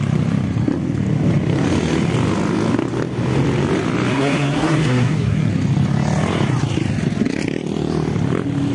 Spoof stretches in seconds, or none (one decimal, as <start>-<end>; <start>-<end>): 4.1-5.5